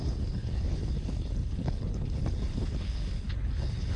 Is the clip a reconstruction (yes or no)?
yes